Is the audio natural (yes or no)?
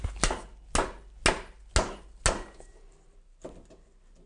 yes